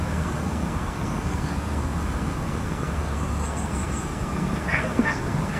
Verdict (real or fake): fake